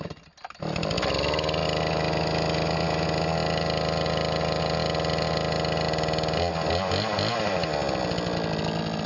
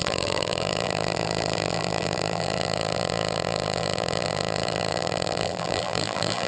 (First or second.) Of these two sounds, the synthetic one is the second